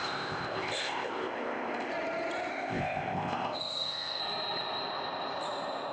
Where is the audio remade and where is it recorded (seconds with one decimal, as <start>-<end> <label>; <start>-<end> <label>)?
0.0-1.9 remade; 1.9-2.5 recorded; 2.5-4.2 remade; 4.2-5.9 recorded

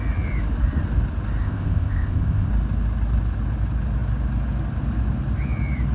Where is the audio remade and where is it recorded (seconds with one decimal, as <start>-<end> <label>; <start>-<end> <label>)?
0.0-1.4 recorded; 1.4-2.5 remade; 2.5-5.9 recorded

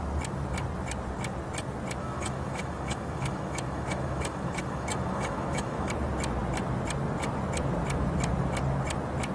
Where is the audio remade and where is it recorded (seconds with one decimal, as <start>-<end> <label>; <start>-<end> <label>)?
0.0-2.0 recorded; 2.0-5.9 remade; 5.9-9.3 recorded

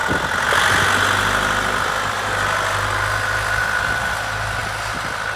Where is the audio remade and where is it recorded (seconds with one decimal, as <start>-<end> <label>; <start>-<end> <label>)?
0.0-5.4 recorded

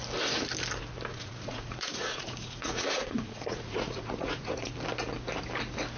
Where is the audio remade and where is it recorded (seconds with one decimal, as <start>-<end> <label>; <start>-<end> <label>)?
0.0-1.1 recorded; 1.1-4.7 remade; 4.7-6.0 recorded